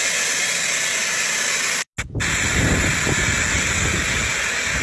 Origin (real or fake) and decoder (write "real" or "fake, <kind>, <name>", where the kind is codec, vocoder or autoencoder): real